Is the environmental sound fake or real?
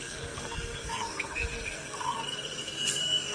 fake